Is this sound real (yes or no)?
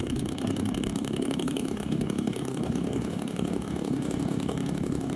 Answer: no